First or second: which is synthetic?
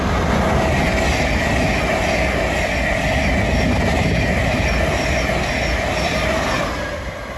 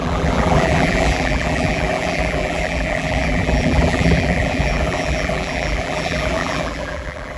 second